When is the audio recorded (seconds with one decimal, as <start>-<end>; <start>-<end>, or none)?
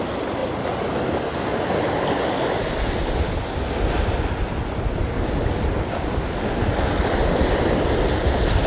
0.0-8.7